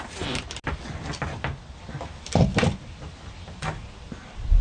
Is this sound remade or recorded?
recorded